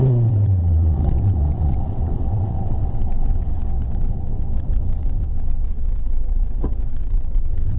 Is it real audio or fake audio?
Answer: fake